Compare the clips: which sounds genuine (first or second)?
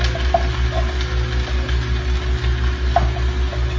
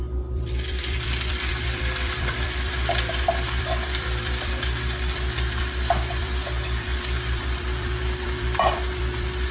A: first